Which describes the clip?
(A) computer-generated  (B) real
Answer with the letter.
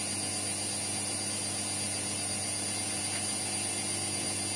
B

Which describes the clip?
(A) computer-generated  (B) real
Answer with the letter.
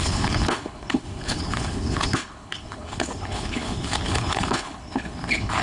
A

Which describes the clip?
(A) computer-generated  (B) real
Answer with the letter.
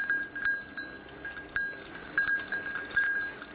B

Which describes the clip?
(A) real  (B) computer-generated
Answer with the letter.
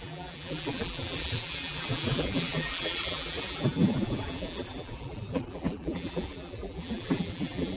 B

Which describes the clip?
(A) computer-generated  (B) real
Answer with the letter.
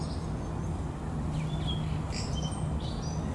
B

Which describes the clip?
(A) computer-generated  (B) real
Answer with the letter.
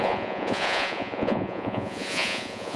A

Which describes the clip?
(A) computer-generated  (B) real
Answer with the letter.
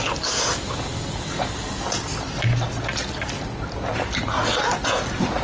B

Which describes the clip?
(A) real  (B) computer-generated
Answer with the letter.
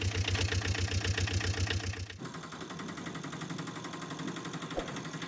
A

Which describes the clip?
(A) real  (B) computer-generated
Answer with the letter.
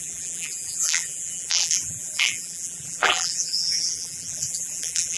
B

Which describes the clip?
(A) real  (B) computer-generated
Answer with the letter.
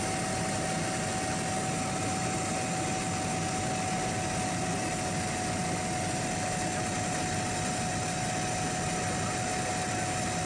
A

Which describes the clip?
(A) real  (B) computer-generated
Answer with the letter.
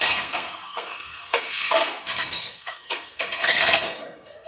B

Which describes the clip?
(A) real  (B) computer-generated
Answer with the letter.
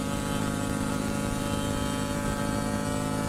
A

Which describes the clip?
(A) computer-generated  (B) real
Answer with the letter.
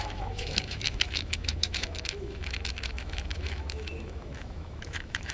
A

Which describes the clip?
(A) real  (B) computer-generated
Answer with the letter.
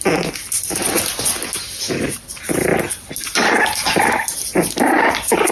A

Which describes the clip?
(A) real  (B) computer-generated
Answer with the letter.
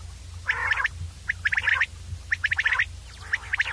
A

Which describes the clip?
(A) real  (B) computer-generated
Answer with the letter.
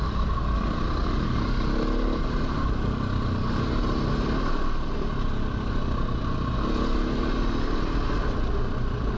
A